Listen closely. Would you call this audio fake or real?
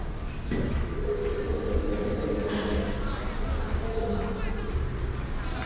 real